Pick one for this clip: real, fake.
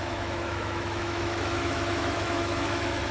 fake